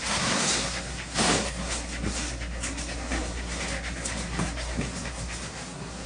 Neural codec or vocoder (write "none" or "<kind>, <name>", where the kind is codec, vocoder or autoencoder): codec, SNAC